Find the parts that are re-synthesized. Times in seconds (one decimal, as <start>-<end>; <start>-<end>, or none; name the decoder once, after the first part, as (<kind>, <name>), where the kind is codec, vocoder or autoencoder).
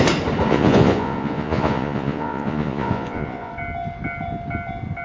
0.5-3.5 (vocoder, Vocos)